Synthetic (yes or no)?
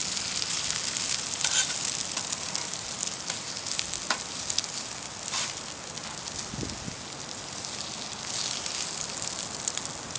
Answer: no